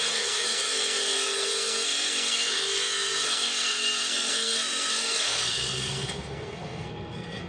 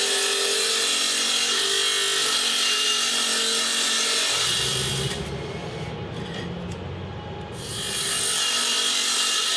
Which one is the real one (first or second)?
second